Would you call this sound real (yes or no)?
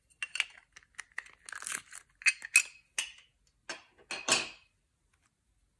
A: yes